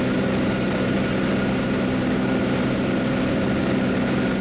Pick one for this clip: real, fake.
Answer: real